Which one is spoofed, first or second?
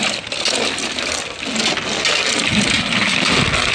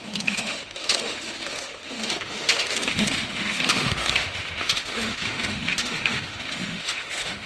second